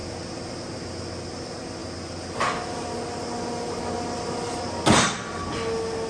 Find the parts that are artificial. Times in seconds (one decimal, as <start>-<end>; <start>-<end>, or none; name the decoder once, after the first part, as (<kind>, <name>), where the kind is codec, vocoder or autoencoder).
none